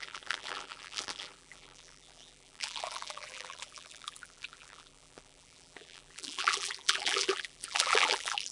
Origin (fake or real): fake